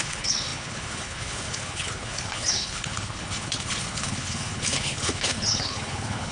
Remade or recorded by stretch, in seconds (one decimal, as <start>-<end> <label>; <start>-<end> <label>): 0.0-6.3 remade